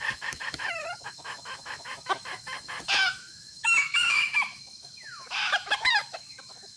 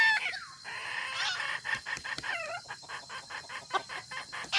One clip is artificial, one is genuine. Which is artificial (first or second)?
first